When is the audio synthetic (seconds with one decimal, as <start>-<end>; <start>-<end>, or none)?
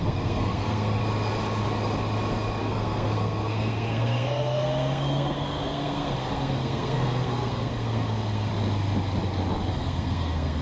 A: 0.0-1.0; 2.6-8.5; 9.7-10.6